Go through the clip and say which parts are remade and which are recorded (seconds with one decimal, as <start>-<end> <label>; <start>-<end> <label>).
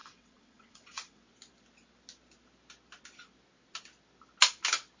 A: 0.0-1.2 remade; 1.2-5.0 recorded